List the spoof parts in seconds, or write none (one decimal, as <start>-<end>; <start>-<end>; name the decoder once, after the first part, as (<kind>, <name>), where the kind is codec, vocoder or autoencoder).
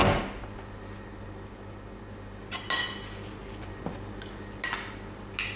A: none